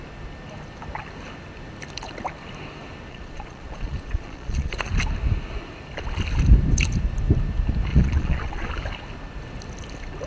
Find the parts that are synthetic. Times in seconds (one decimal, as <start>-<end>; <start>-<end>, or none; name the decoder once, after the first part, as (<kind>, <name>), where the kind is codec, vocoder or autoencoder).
3.1-4.9 (vocoder, Vocos); 7.9-8.7